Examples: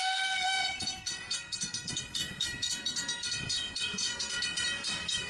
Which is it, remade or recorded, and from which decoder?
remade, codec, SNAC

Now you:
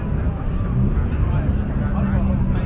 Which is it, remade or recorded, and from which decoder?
recorded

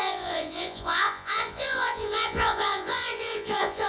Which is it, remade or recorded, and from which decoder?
remade, vocoder, Vocos